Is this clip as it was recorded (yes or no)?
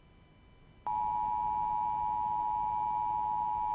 yes